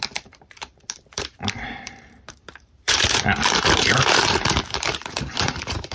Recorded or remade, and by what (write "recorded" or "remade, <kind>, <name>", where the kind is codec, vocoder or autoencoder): remade, vocoder, BigVGAN v2